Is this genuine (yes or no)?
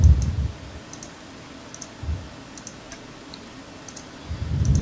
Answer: yes